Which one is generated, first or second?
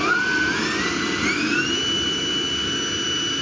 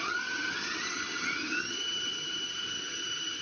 second